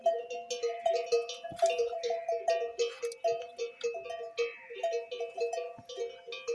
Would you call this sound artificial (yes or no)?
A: no